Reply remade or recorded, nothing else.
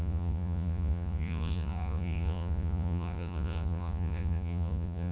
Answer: remade